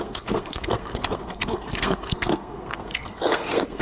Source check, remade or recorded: remade